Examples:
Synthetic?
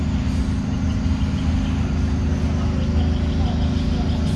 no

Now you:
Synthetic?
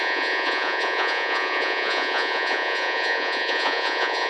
yes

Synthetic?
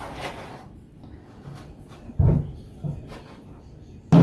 no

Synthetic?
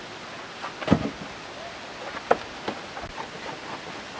no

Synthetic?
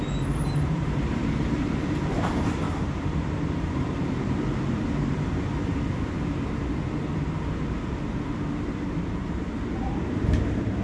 yes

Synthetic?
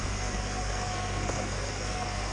yes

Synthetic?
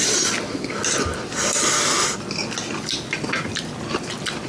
no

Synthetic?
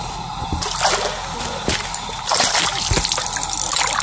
no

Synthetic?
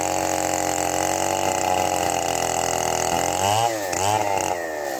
no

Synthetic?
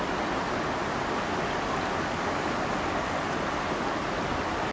no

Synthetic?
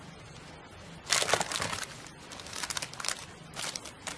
yes